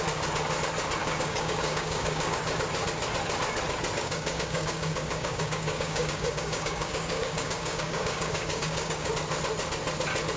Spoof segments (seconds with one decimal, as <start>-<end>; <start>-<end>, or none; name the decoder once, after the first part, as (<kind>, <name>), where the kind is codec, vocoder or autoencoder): 1.0-2.4 (codec, DAC); 4.0-9.1

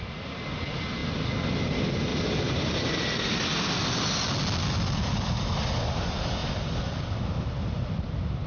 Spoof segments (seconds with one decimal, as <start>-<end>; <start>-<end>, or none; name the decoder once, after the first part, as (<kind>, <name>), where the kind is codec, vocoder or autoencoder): 2.1-2.9 (vocoder, BigVGAN v2); 6.4-7.0

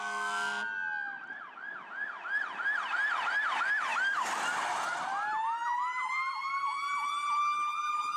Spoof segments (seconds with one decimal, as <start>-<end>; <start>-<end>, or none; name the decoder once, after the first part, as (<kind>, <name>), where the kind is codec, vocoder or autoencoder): none

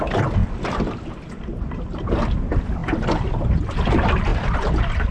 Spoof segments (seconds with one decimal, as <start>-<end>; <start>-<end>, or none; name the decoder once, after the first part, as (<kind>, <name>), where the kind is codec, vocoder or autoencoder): 0.4-1.8 (vocoder, BigVGAN v2)

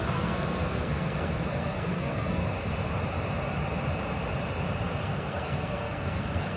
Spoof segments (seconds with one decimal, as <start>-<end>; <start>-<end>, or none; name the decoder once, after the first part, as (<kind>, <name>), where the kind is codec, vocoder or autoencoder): 0.0-2.4 (codec, SNAC); 5.0-6.6